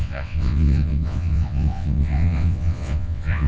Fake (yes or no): yes